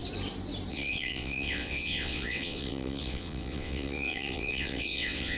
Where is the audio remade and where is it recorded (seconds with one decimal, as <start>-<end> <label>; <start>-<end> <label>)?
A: 0.0-0.7 recorded; 0.7-5.4 remade